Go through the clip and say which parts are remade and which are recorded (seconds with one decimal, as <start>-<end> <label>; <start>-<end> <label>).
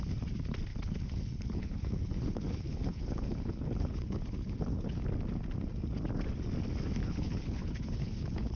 0.0-0.7 recorded; 0.7-5.0 remade; 5.0-7.0 recorded; 7.0-8.6 remade